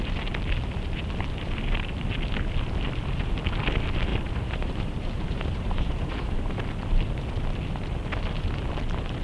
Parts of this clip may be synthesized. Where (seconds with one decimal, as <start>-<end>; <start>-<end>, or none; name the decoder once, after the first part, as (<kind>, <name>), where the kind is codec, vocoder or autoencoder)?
4.1-6.6 (vocoder, BigVGAN v2)